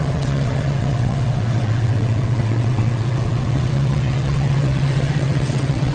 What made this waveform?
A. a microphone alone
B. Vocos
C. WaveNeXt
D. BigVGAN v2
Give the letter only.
C